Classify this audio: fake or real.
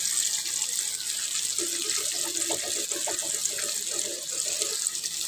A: real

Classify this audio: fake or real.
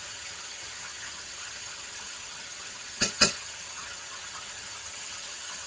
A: fake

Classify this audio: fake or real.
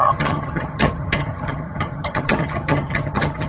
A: fake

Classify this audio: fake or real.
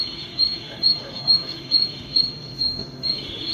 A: fake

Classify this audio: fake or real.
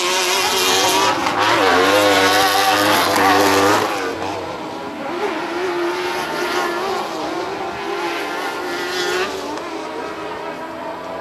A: real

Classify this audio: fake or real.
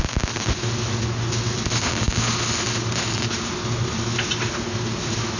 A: real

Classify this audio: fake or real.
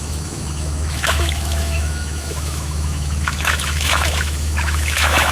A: fake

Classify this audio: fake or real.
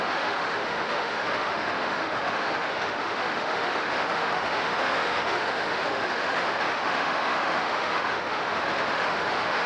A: fake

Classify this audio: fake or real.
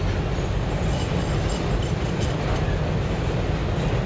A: real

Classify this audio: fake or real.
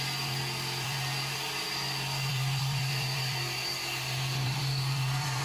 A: fake